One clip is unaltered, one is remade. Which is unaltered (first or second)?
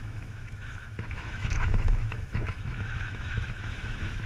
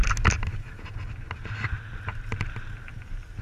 second